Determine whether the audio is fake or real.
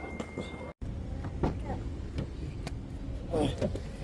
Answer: real